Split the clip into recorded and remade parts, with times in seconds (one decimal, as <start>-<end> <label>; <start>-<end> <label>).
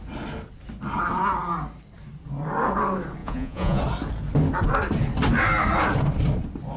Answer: 0.0-3.2 recorded; 3.2-3.8 remade; 3.8-6.8 recorded